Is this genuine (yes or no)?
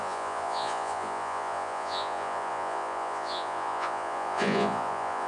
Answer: no